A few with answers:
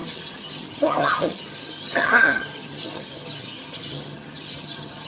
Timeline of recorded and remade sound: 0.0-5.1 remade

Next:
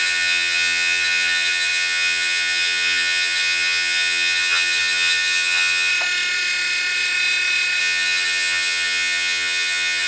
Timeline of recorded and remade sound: 0.0-5.9 remade; 5.9-7.8 recorded; 7.8-10.1 remade